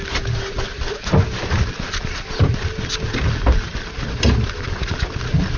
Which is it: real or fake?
real